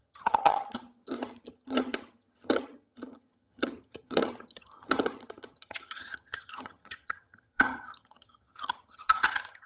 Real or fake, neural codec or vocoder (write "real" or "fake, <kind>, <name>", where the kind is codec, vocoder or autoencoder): fake, vocoder, HiFi-GAN